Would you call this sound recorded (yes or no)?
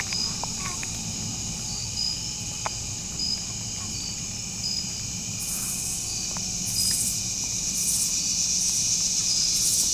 yes